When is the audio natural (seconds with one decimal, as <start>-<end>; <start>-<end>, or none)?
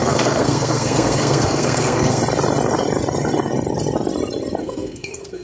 2.2-4.6